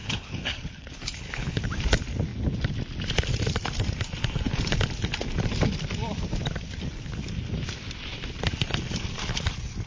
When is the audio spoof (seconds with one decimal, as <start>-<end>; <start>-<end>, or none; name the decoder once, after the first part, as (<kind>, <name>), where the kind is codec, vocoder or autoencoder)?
0.0-1.6 (codec, HILCodec)